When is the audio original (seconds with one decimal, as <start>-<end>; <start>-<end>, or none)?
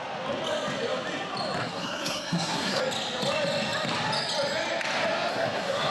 0.0-1.6; 2.8-5.3